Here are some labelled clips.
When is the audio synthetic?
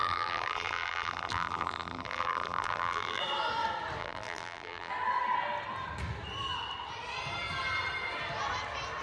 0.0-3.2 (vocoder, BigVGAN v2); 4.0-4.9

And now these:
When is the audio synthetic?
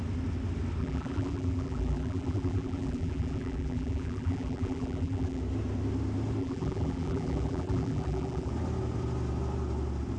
0.8-5.4 (vocoder, BigVGAN v2); 6.4-8.5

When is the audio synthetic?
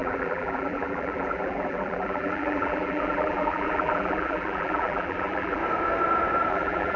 0.0-5.6 (vocoder, BigVGAN v2); 6.5-7.0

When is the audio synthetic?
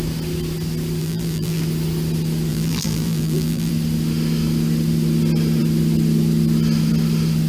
1.0-1.6 (vocoder, BigVGAN v2); 2.5-3.7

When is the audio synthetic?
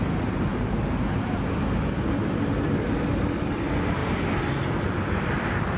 none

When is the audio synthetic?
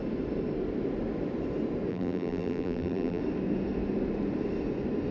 1.9-3.2 (vocoder, BigVGAN v2)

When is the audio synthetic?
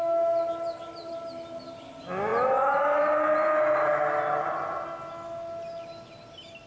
none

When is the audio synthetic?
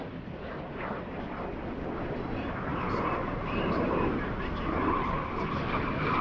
2.7-4.3 (vocoder, BigVGAN v2)